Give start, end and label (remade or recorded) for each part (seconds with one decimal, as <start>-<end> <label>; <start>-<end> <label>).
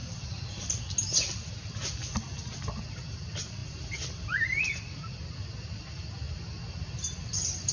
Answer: 0.0-7.7 recorded